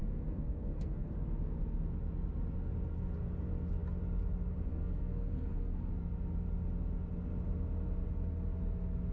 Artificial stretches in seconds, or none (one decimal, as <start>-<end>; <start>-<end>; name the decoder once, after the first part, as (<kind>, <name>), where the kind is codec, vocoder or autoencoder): 0.0-1.1 (codec, SNAC); 4.7-5.9